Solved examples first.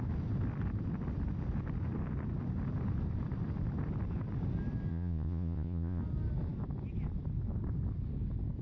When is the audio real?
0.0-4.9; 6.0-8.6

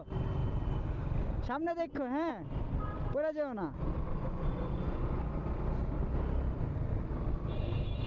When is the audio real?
0.0-4.1; 5.2-8.1

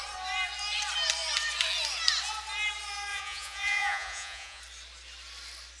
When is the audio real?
0.0-3.1; 4.6-5.8

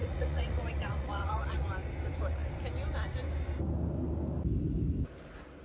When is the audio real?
1.7-5.6

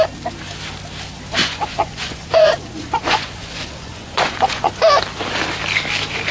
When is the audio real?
0.0-1.4; 4.7-6.3